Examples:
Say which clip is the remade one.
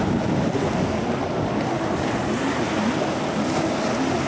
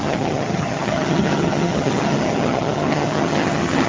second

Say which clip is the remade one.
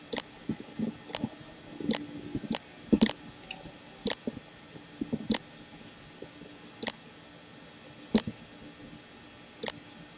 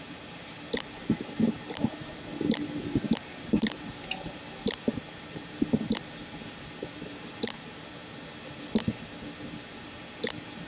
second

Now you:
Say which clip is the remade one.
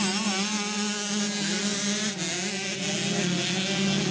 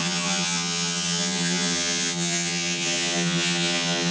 second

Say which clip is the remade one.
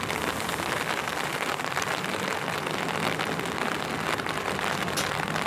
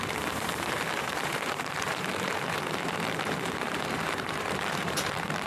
second